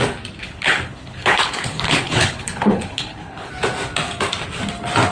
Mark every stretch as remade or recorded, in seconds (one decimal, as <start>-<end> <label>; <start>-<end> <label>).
0.0-0.4 recorded; 0.4-3.5 remade; 3.5-5.1 recorded